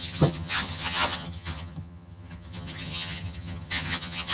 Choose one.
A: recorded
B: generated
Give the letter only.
B